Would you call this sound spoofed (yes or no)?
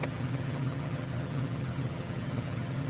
yes